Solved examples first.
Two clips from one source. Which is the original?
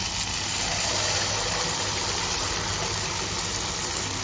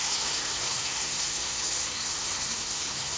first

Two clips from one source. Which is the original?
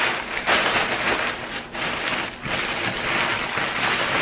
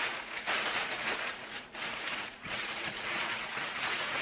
first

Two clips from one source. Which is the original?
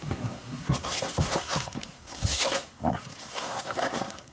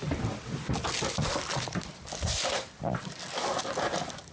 second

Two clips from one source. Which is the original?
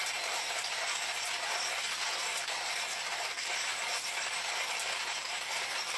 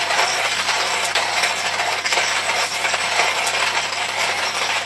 second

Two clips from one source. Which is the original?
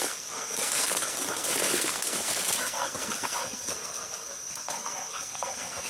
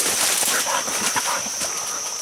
second